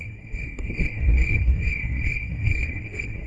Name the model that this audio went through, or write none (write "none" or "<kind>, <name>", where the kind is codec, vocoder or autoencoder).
codec, SNAC